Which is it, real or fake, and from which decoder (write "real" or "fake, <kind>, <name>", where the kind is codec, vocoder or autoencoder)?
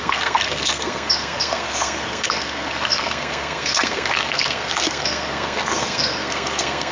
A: fake, codec, SNAC